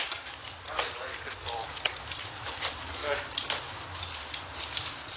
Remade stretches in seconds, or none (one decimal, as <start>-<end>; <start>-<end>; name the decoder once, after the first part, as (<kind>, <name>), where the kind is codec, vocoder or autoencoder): 0.0-0.4 (vocoder, BigVGAN v2); 2.1-3.0; 3.6-5.2